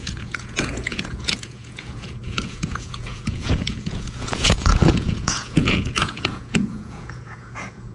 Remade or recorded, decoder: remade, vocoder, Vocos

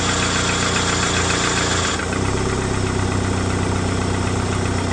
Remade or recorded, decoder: recorded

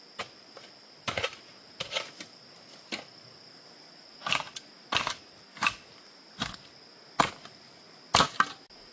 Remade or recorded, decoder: recorded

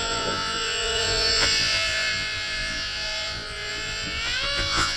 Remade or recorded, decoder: remade, vocoder, Vocos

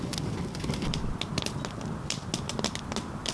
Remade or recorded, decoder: recorded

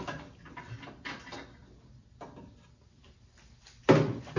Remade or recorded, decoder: recorded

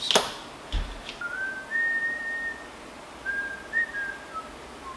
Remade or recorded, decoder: recorded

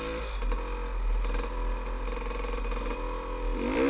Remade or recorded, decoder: recorded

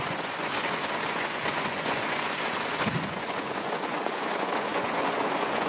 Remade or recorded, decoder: remade, vocoder, Vocos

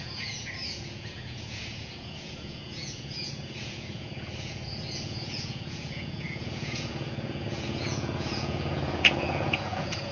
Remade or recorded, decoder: remade, vocoder, Vocos